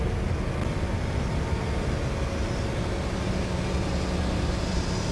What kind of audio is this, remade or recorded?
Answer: recorded